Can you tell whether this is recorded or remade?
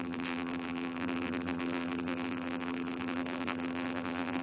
remade